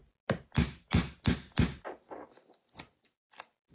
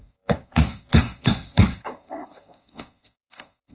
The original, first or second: first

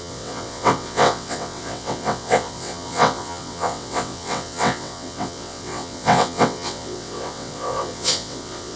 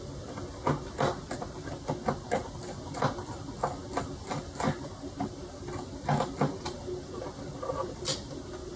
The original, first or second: second